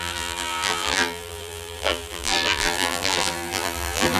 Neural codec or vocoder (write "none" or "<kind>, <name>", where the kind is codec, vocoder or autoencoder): vocoder, BigVGAN v2